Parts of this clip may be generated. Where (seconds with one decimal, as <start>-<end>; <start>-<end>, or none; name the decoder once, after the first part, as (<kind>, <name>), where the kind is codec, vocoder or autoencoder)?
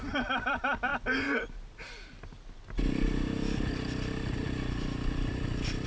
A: 0.0-0.9 (vocoder, BigVGAN v2); 4.4-5.9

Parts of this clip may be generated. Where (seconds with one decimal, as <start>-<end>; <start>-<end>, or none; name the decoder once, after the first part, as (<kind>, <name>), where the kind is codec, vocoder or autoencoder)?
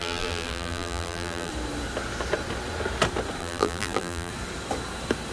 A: 0.0-1.5 (vocoder, BigVGAN v2); 3.4-4.3